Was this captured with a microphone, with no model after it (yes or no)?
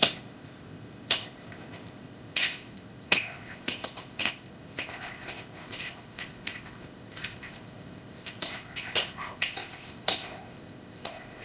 no